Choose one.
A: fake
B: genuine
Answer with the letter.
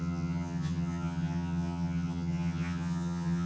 A